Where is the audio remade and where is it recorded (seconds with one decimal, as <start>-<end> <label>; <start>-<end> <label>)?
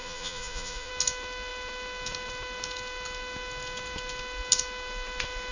0.0-0.9 remade; 0.9-5.5 recorded